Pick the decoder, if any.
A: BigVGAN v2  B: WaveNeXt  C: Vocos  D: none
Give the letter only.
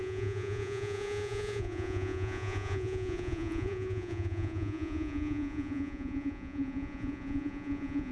C